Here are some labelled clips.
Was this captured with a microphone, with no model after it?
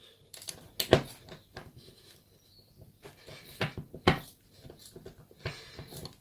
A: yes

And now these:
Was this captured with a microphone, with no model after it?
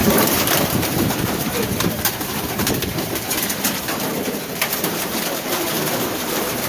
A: no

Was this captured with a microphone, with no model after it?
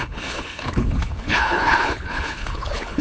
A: no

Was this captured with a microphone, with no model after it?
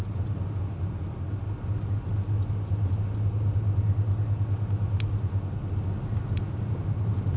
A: yes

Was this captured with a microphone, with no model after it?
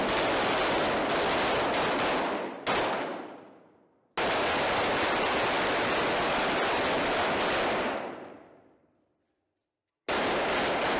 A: yes